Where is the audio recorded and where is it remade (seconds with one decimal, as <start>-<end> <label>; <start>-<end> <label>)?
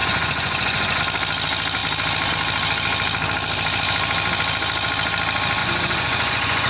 0.0-1.0 remade; 1.0-5.6 recorded; 5.6-6.7 remade